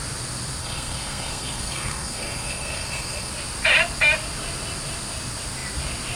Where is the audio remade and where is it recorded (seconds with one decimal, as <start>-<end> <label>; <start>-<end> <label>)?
0.0-0.6 recorded; 0.6-3.3 remade; 3.3-6.2 recorded